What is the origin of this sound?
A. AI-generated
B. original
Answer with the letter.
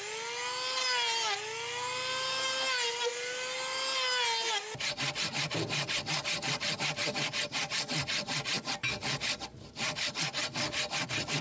B